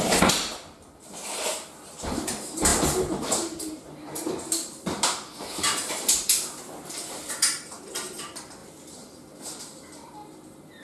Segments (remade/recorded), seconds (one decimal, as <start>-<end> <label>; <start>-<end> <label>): 0.0-8.6 remade; 8.6-9.6 recorded; 9.6-10.2 remade; 10.2-10.8 recorded

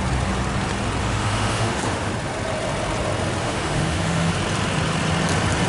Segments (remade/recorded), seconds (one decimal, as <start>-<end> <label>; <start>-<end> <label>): 0.0-1.0 recorded; 1.0-2.1 remade; 2.1-3.4 recorded; 3.4-4.3 remade; 4.3-5.7 recorded

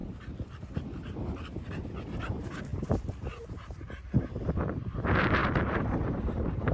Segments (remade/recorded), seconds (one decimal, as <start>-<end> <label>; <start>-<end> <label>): 0.0-1.9 recorded; 1.9-6.7 remade